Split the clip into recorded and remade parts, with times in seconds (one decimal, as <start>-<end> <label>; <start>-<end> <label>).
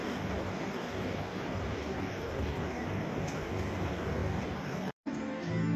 0.0-5.8 remade